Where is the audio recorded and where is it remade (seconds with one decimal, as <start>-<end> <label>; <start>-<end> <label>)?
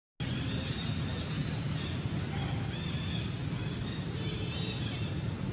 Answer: 0.0-1.4 recorded; 1.4-3.1 remade; 3.1-3.8 recorded; 3.8-5.0 remade; 5.0-5.5 recorded